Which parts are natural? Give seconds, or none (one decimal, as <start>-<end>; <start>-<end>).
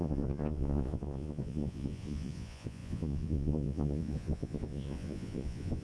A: none